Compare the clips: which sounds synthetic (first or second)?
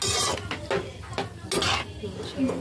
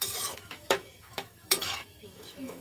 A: second